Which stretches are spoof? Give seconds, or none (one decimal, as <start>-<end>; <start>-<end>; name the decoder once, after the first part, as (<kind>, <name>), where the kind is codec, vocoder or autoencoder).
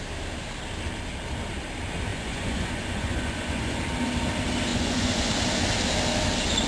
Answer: 2.1-3.8 (vocoder, Vocos); 4.7-5.3